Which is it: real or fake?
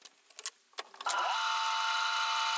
real